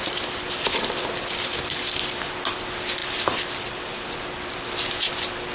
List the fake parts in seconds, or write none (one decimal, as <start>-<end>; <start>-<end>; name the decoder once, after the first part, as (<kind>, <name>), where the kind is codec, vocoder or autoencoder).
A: none